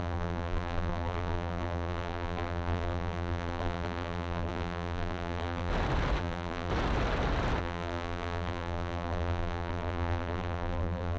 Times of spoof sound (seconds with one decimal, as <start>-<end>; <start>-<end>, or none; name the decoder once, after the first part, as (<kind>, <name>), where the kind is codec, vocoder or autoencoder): 0.0-5.7 (vocoder, BigVGAN v2); 6.2-6.7; 7.6-11.2